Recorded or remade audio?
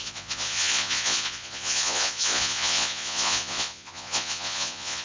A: remade